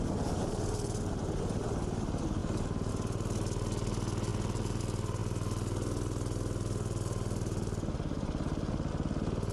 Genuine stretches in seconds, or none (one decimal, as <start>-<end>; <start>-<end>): 0.0-9.5